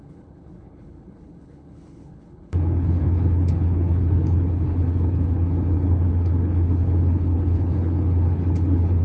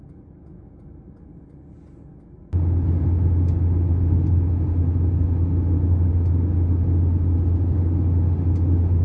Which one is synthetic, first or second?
first